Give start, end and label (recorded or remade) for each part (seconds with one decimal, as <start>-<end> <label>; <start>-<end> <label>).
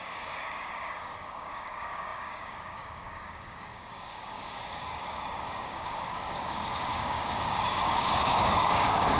0.0-9.2 remade